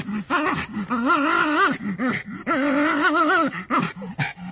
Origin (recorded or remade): recorded